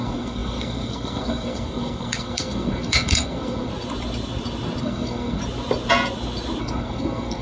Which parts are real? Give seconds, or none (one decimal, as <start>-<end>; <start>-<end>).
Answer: 3.7-4.8; 5.4-6.6